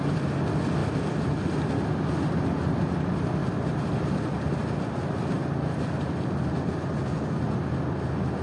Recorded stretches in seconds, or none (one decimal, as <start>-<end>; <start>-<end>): 0.0-8.4